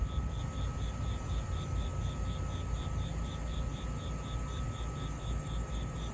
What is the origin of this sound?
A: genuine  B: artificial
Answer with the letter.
A